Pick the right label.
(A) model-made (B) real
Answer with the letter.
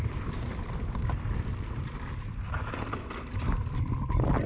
B